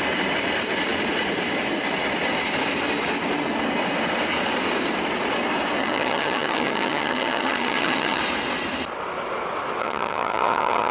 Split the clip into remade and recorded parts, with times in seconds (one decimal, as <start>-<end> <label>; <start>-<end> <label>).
0.0-5.8 recorded; 5.8-8.2 remade; 8.2-9.8 recorded; 9.8-10.9 remade